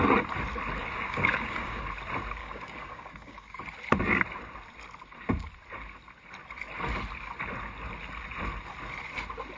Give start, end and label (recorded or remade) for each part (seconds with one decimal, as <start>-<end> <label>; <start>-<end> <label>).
0.0-0.8 recorded; 0.8-1.8 remade; 1.8-2.4 recorded; 2.4-3.6 remade; 3.6-9.6 recorded